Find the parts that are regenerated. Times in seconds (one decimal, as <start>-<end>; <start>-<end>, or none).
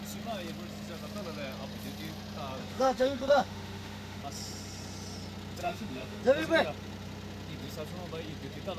2.6-4.2; 5.6-6.2